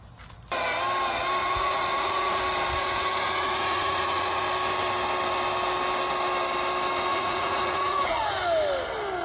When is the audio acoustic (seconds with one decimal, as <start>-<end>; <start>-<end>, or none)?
0.0-1.4; 2.4-2.8; 4.4-7.1; 8.2-9.2